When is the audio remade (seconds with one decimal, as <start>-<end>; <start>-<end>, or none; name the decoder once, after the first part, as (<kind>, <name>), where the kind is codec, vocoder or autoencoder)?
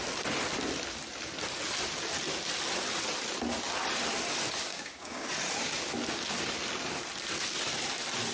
4.6-5.3 (codec, DAC)